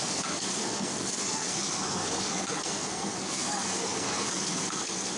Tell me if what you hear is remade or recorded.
remade